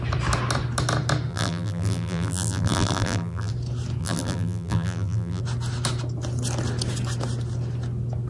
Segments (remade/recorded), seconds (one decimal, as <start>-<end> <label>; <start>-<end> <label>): 0.0-1.3 recorded; 1.3-3.5 remade; 3.5-4.0 recorded; 4.0-5.4 remade; 5.4-8.3 recorded